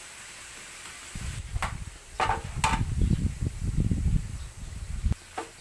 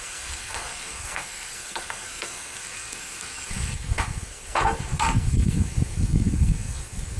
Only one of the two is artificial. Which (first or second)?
second